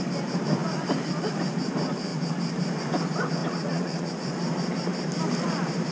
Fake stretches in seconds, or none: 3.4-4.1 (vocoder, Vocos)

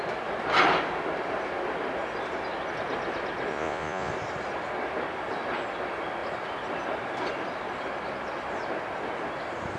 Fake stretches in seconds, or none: 3.5-4.1 (vocoder, Vocos)

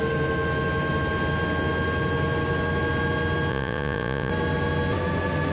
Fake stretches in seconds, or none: 3.5-4.3 (vocoder, Vocos)

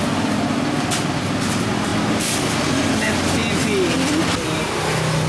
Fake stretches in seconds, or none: none

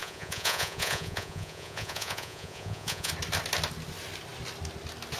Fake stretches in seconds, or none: 0.0-3.1 (vocoder, Vocos)